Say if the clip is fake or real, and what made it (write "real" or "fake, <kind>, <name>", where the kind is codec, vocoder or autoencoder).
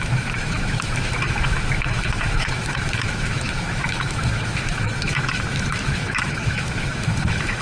fake, autoencoder, DAC-VAE